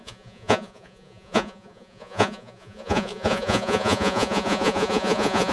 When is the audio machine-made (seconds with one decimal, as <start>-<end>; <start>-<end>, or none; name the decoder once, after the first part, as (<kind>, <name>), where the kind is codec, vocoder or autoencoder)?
0.0-5.5 (vocoder, Vocos)